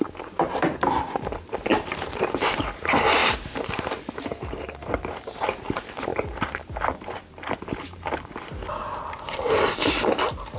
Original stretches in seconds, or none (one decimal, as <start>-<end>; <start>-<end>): none